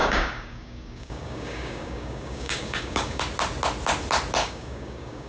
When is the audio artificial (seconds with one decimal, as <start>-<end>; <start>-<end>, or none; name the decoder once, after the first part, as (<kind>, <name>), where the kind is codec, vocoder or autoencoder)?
0.0-3.2 (codec, DAC); 4.4-5.3